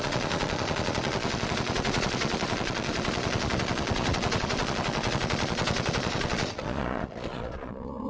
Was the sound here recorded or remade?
remade